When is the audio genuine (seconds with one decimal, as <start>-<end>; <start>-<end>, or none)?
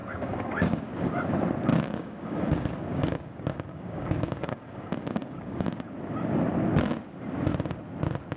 0.8-1.7; 5.8-8.4